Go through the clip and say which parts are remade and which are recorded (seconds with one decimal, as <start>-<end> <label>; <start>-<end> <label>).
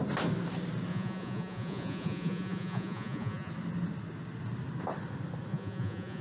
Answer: 0.0-0.9 recorded; 0.9-3.5 remade; 3.5-5.5 recorded; 5.5-6.2 remade